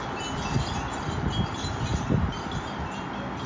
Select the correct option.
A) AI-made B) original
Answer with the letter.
B